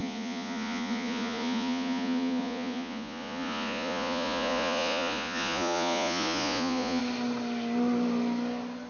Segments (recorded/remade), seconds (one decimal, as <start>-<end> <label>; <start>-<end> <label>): 0.0-7.0 remade; 7.0-8.9 recorded